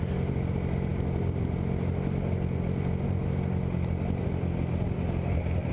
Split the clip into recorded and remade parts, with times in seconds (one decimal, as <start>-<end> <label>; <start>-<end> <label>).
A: 0.0-5.7 recorded